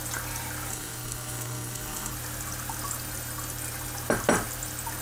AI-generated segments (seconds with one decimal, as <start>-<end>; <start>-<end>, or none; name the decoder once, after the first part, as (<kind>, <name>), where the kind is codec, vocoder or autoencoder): 0.7-2.1 (codec, SNAC)